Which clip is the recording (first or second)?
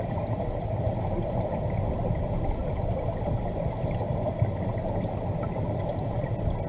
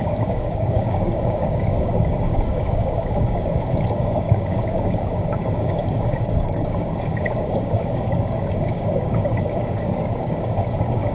first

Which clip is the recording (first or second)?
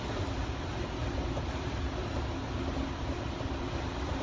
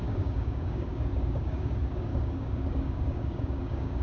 first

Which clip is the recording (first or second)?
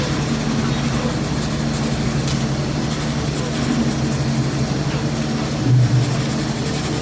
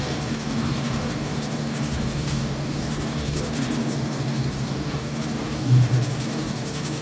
first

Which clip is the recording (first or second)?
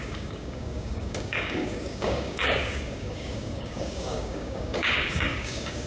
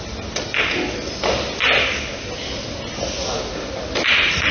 second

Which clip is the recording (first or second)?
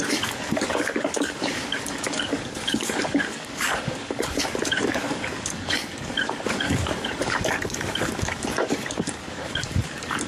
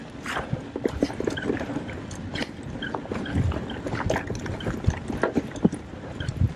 second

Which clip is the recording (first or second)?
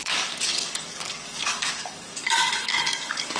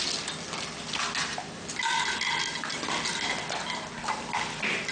second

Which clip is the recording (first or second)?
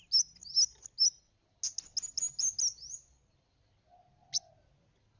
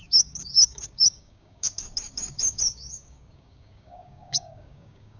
first